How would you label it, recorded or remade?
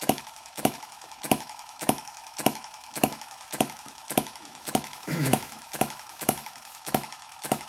remade